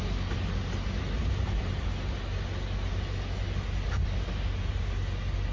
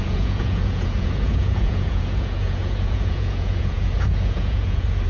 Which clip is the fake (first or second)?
second